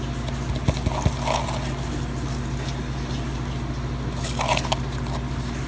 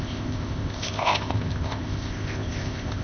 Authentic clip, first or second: first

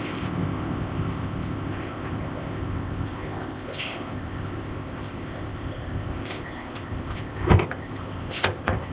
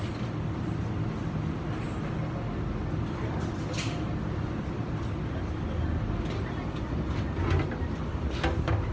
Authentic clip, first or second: second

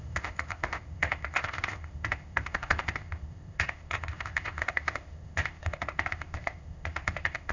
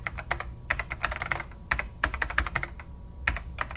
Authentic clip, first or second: second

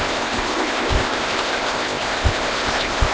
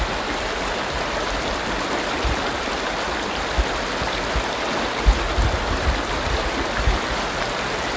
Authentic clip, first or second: second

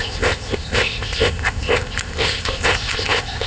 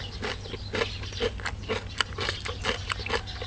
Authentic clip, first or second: second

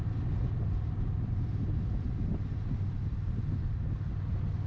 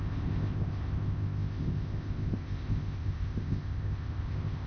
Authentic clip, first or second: first